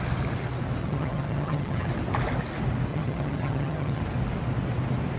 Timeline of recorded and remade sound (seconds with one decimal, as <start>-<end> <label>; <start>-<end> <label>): 0.0-0.8 recorded; 0.8-1.9 remade; 1.9-2.9 recorded; 2.9-4.0 remade; 4.0-5.2 recorded